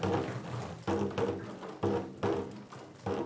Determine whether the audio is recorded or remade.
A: recorded